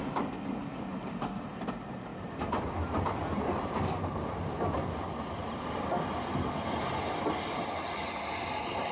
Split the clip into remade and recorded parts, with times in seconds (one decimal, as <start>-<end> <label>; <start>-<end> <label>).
0.0-2.1 recorded; 2.1-7.3 remade; 7.3-8.9 recorded